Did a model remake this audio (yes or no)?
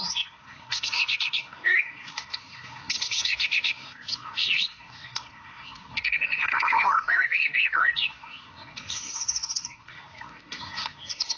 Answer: yes